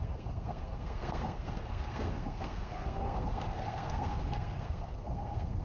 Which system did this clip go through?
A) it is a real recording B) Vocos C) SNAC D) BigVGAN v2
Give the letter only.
C